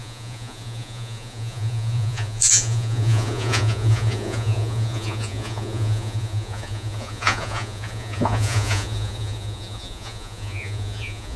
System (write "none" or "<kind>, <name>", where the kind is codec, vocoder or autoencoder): vocoder, Vocos